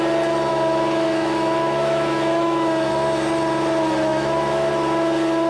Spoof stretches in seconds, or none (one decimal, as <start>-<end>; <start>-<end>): 0.5-2.9; 4.1-4.7